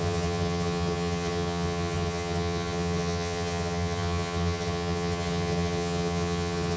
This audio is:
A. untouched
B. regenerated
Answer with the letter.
B